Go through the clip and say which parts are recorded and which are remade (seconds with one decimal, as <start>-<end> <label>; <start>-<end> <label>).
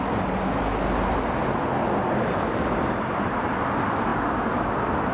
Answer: 0.0-1.4 recorded; 1.4-3.1 remade; 3.1-4.1 recorded; 4.1-5.1 remade